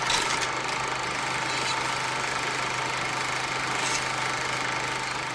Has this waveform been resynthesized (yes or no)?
no